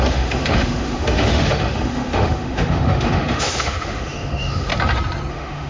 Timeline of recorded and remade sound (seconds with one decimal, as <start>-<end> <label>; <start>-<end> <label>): 0.0-4.7 remade; 4.7-5.3 recorded; 5.3-5.7 remade